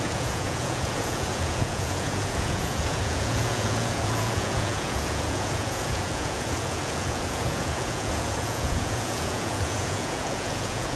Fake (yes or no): yes